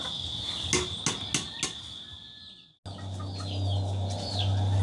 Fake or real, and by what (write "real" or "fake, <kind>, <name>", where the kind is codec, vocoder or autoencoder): real